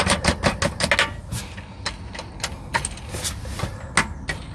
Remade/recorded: recorded